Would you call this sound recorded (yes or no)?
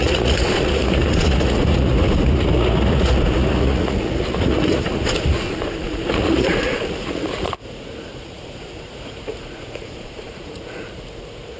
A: no